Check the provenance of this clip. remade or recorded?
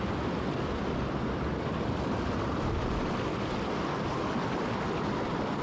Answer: recorded